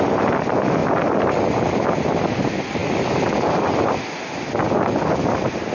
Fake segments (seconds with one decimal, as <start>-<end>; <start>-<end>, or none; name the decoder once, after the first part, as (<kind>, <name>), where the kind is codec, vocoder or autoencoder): 0.8-1.3 (vocoder, BigVGAN v2); 2.8-3.7